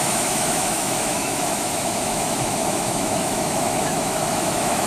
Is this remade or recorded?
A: remade